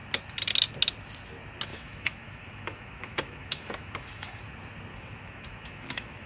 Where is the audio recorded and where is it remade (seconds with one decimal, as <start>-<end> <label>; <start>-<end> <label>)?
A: 0.0-1.7 recorded; 1.7-4.4 remade; 4.4-4.9 recorded; 4.9-6.3 remade